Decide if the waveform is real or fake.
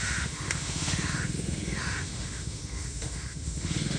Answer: fake